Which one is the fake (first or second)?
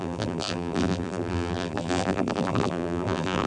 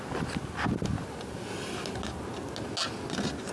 first